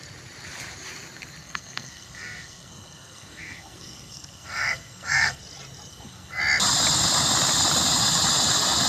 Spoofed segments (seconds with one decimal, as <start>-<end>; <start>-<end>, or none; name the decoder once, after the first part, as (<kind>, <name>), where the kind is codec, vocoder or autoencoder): 1.4-5.4 (codec, SNAC); 5.9-6.4